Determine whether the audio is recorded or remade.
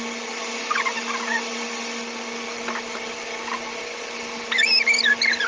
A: recorded